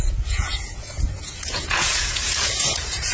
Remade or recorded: remade